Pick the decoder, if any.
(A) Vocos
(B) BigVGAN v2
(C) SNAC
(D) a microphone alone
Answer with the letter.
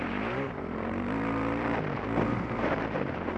B